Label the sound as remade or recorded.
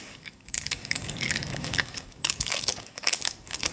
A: remade